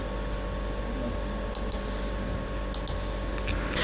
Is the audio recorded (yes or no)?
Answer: yes